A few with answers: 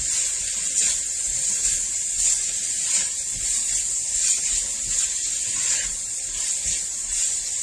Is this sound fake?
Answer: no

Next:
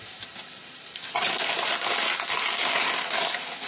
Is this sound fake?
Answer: no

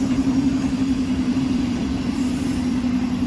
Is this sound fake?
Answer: yes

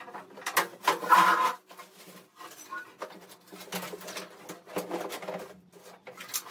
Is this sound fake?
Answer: no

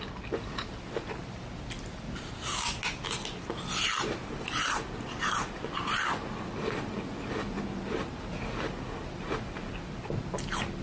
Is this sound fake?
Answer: no